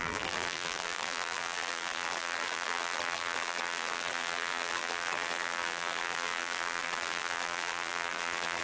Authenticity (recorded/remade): remade